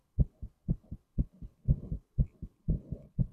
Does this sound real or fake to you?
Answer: real